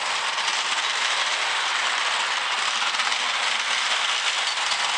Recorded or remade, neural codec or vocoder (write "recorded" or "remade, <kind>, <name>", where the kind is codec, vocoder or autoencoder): recorded